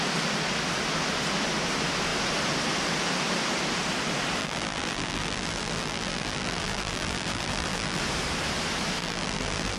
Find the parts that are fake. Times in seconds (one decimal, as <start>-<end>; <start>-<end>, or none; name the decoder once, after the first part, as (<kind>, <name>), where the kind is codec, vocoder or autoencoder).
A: 4.4-8.0 (vocoder, BigVGAN v2); 9.0-9.8

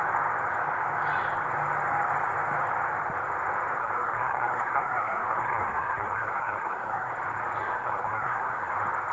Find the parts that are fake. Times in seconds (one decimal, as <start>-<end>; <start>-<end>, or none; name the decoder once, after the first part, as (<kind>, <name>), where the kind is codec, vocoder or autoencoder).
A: 3.8-7.1 (codec, SNAC); 7.6-8.7

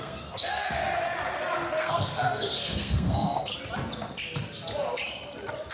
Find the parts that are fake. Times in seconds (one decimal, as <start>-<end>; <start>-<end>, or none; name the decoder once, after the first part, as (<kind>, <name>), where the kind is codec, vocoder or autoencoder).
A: 0.0-0.8 (codec, SNAC); 1.8-3.5

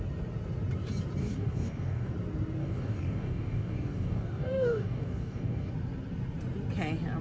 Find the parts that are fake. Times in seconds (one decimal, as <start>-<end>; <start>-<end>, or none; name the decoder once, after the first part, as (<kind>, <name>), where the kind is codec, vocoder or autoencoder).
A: 1.2-2.1 (codec, DAC); 2.6-5.7